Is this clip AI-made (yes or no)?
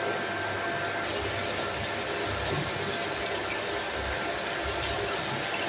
no